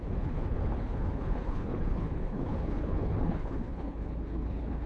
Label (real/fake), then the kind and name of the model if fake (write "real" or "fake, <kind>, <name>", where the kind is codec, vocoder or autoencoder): fake, codec, HILCodec